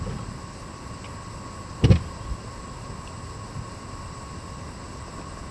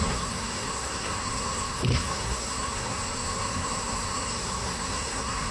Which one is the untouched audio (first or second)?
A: first